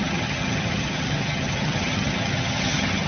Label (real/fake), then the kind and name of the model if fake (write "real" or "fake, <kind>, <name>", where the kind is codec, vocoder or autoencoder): fake, vocoder, HiFi-GAN